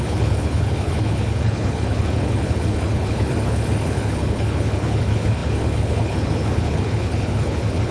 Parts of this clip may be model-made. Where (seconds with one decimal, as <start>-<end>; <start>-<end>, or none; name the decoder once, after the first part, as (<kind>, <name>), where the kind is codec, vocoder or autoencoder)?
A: 0.0-7.9 (codec, HILCodec)